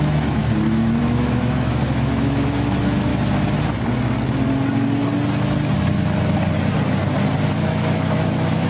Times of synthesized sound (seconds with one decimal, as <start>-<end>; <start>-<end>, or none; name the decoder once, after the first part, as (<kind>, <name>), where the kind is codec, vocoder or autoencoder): 0.0-0.4 (autoencoder, DAC-VAE); 1.0-3.1; 7.5-8.7